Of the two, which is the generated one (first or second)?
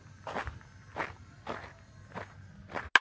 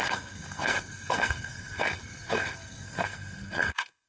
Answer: second